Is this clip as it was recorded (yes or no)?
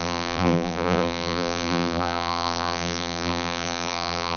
no